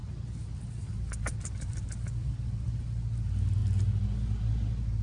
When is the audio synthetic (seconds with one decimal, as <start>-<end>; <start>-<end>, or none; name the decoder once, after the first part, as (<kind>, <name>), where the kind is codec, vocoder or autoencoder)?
none